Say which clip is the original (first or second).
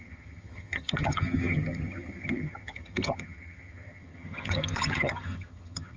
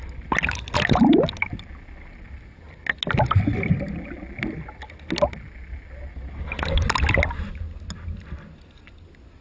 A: second